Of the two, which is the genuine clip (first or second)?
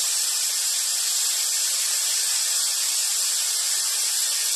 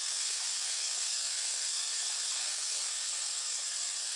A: first